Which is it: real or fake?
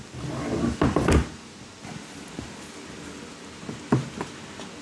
real